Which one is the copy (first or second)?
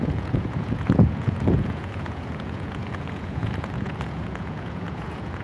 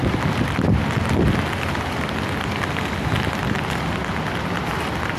first